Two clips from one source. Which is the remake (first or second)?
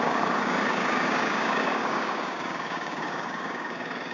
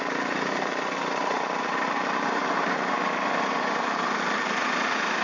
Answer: first